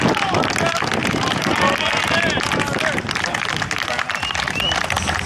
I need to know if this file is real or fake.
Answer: real